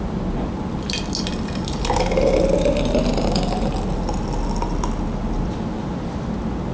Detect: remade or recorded recorded